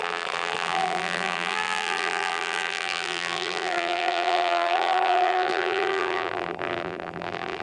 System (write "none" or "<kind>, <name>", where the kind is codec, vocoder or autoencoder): vocoder, BigVGAN v2